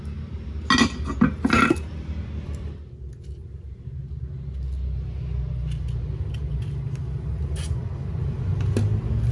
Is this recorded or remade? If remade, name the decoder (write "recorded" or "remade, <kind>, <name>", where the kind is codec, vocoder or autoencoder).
recorded